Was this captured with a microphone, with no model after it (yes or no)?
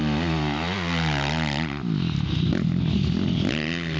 yes